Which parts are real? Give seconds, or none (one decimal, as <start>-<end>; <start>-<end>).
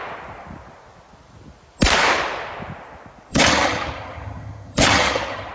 0.0-3.3